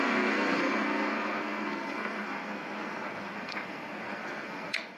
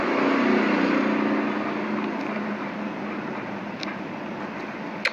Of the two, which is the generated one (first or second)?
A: first